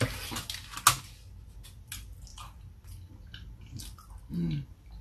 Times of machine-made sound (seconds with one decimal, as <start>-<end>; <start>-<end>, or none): none